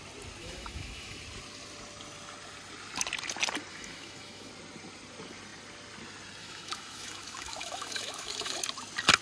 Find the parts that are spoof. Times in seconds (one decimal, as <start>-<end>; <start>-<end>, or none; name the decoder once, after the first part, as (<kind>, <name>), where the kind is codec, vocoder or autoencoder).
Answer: 0.4-1.2 (autoencoder, DAC-VAE); 3.7-4.5; 6.4-8.6